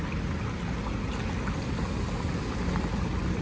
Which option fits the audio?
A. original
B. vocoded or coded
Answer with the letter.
A